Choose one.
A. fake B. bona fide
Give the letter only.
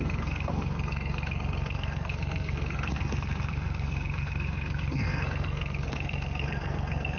A